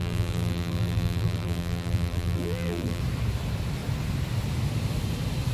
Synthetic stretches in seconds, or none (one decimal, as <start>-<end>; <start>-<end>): 0.0-3.0